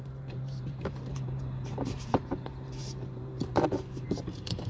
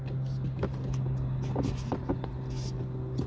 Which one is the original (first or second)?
second